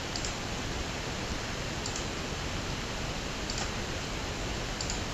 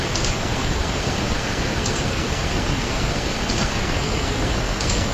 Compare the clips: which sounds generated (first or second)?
second